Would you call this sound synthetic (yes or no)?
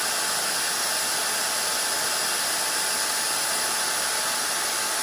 no